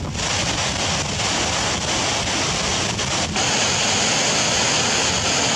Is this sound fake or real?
real